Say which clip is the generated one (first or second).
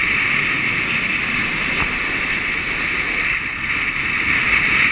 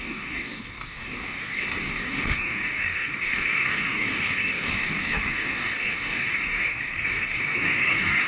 second